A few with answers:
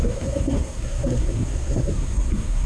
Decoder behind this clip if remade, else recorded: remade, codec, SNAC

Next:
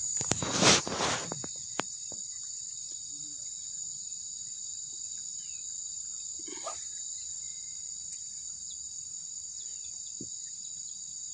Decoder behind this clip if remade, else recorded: remade, vocoder, BigVGAN v2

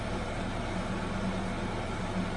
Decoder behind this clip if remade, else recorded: recorded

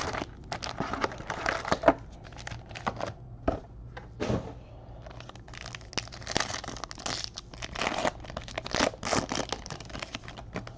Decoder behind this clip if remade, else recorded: recorded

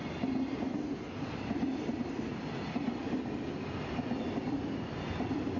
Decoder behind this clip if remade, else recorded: recorded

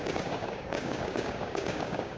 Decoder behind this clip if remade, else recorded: remade, codec, DAC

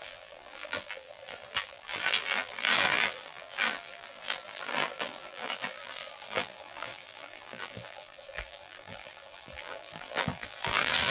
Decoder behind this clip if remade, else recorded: remade, vocoder, BigVGAN v2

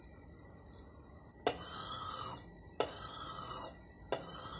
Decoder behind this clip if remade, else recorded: recorded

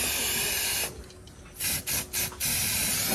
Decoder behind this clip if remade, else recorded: recorded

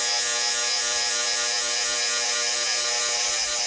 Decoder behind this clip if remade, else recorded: recorded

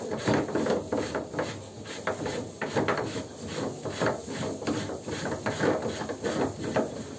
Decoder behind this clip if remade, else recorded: recorded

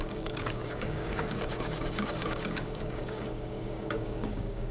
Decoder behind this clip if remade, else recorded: remade, codec, DAC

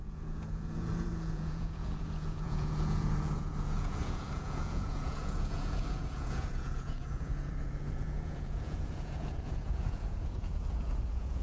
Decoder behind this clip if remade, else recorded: remade, vocoder, Vocos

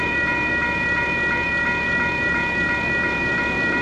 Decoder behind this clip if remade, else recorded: remade, vocoder, BigVGAN v2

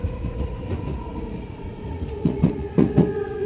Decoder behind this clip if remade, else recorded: remade, vocoder, Vocos